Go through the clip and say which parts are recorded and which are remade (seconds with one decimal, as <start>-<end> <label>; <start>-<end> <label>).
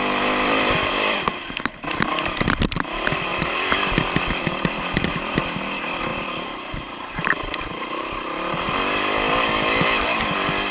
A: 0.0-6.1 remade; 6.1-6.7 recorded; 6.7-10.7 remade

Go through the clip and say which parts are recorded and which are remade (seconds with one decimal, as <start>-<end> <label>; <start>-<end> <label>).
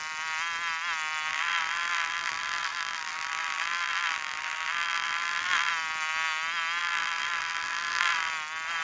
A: 0.0-1.3 recorded; 1.3-5.7 remade; 5.7-6.8 recorded; 6.8-8.3 remade; 8.3-8.8 recorded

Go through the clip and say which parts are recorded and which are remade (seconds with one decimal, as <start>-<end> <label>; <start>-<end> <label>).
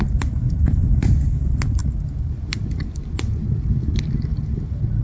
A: 0.0-5.0 recorded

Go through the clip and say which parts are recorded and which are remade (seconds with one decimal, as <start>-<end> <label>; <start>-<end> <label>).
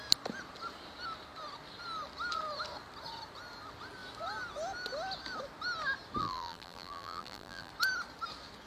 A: 0.0-6.2 recorded; 6.2-7.7 remade; 7.7-8.7 recorded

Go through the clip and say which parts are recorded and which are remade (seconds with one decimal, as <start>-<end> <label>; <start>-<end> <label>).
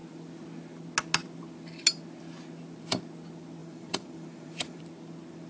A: 0.0-3.6 recorded; 3.6-4.8 remade; 4.8-5.5 recorded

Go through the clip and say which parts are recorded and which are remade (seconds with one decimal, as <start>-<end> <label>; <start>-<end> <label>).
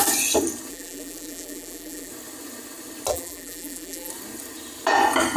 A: 0.0-0.7 recorded; 0.7-2.1 remade; 2.1-3.1 recorded; 3.1-4.1 remade; 4.1-5.4 recorded